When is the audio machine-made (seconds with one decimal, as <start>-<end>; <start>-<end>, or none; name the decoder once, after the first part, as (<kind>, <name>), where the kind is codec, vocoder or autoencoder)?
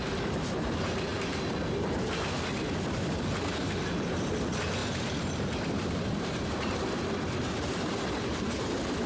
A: 4.8-6.7 (vocoder, BigVGAN v2); 8.3-9.1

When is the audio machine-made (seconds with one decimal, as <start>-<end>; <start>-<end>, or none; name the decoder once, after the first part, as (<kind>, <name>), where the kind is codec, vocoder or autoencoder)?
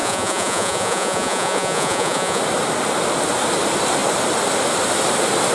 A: 0.0-2.4 (vocoder, Vocos)